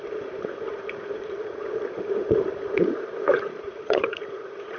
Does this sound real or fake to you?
fake